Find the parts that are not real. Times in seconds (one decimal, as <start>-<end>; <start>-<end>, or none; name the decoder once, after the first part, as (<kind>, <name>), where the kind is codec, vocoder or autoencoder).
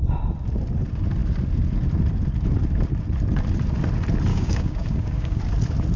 4.3-5.4 (codec, DAC)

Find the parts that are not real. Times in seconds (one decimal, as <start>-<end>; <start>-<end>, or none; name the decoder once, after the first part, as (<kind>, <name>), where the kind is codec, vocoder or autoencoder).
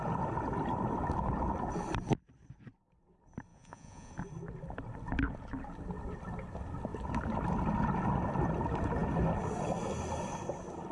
3.5-4.1 (vocoder, Vocos)